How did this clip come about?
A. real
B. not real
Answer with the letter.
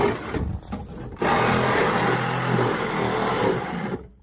A